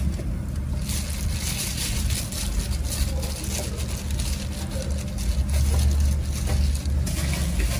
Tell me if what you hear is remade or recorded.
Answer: recorded